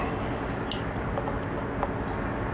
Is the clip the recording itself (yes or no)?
yes